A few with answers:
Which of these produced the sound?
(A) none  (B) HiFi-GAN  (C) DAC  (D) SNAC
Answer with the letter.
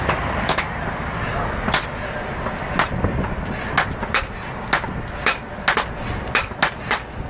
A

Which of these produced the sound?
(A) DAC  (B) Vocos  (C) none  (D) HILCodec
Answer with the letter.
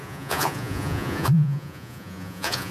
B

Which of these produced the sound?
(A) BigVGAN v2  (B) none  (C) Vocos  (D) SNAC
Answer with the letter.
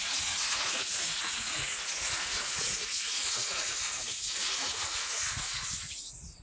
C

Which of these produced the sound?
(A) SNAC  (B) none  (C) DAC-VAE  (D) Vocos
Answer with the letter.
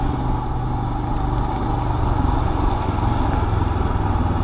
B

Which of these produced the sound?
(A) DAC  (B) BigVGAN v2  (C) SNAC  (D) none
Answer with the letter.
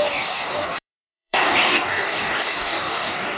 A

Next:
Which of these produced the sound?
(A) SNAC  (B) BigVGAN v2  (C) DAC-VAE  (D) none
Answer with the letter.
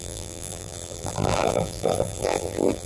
B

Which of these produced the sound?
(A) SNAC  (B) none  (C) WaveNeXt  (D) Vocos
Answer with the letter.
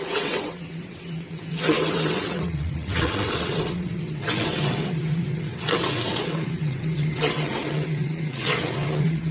C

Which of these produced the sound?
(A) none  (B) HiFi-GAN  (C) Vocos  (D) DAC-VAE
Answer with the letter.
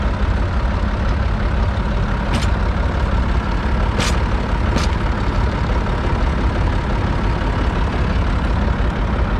A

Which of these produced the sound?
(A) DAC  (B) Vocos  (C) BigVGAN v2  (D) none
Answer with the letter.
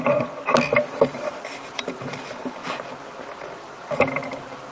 D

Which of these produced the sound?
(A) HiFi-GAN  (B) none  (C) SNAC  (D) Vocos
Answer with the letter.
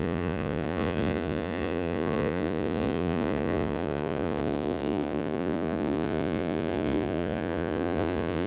D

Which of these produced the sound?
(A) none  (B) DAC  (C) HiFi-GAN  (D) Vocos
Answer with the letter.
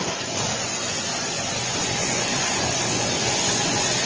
D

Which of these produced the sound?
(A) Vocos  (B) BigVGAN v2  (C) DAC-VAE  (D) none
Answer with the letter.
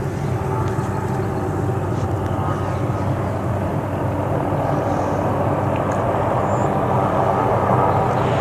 D